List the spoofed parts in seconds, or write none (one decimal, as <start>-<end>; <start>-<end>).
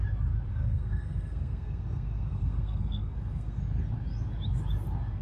0.5-3.6